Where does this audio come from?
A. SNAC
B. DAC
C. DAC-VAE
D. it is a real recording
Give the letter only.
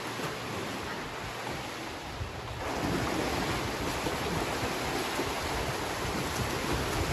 D